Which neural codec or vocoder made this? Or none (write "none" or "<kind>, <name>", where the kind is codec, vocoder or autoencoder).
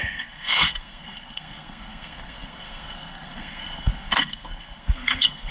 codec, SNAC